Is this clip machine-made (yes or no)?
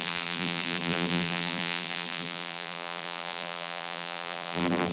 yes